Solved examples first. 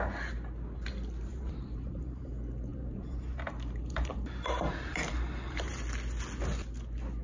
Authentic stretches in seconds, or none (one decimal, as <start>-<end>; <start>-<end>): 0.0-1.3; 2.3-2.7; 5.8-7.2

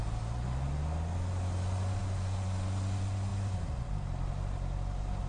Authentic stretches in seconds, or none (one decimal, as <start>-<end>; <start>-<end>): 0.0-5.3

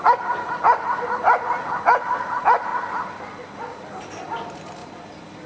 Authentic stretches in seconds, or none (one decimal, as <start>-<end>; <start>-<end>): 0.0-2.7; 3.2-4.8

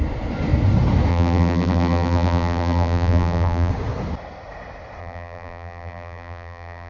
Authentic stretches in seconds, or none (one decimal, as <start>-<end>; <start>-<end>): 0.0-1.1; 3.7-5.0

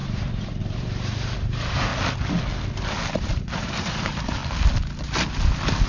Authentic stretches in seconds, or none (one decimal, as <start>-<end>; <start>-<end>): 1.9-3.2; 4.4-5.9

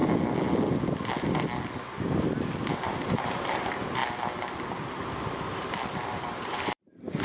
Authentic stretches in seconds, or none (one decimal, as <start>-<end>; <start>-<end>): 0.0-2.7; 4.0-5.9

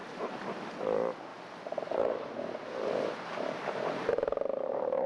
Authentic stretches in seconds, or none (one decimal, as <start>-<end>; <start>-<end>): 1.3-1.9